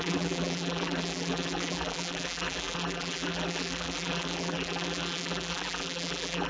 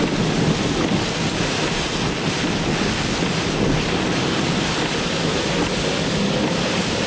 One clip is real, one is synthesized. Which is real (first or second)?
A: second